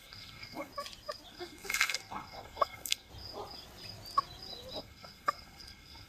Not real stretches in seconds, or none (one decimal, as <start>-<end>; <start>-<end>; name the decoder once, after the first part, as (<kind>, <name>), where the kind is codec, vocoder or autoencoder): 0.0-0.7 (codec, SNAC); 1.3-3.1; 4.8-6.1